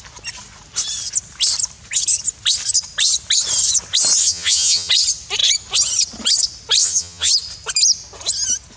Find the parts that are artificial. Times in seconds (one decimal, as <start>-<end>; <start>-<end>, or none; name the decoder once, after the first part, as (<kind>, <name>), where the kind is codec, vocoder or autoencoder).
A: 4.2-4.9 (vocoder, HiFi-GAN); 6.8-7.3